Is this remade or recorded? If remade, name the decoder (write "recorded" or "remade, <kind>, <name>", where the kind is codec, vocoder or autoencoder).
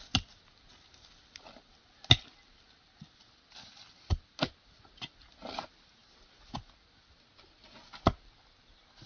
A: recorded